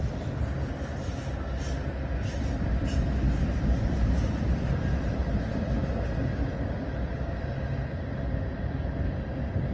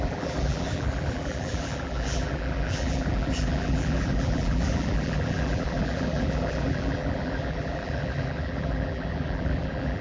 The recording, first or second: first